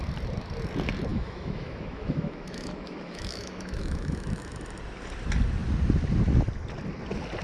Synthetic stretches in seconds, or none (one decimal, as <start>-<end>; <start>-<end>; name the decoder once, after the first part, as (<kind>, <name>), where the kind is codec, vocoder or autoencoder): 1.1-4.7 (autoencoder, DAC-VAE)